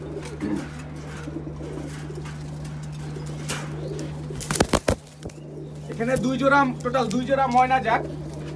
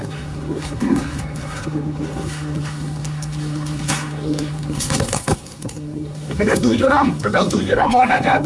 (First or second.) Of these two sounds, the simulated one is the second